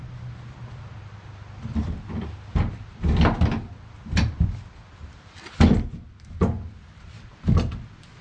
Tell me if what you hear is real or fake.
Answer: real